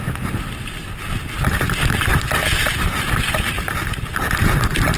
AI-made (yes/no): no